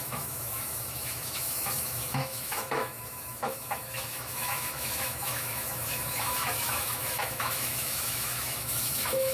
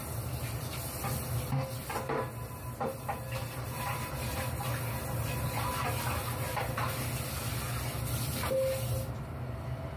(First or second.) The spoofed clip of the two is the first